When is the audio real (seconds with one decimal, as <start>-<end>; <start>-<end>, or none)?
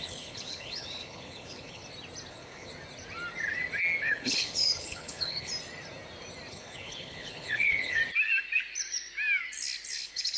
1.8-2.3; 2.7-4.0; 5.5-6.5; 8.0-9.9